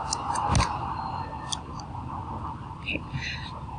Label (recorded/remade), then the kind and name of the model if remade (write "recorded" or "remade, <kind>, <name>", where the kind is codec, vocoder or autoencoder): recorded